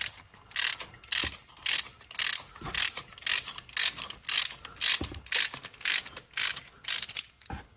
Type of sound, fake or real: real